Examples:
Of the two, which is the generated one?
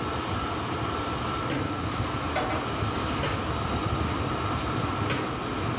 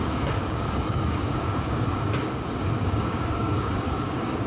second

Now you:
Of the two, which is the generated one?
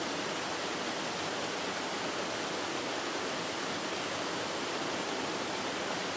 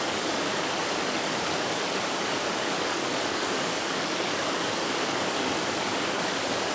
second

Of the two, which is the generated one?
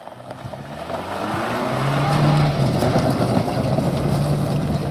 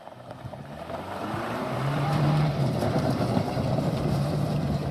second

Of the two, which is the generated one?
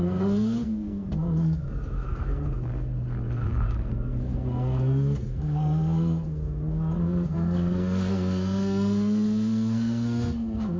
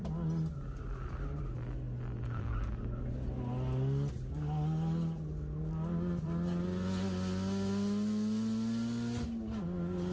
first